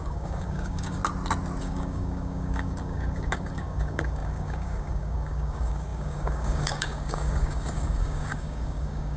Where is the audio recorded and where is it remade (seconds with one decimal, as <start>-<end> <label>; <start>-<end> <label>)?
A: 0.0-1.0 remade; 1.0-1.6 recorded; 1.6-9.2 remade